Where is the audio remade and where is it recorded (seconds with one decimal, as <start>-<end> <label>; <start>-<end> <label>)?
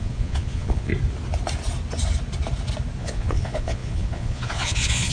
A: 0.0-0.9 remade; 0.9-3.0 recorded; 3.0-5.1 remade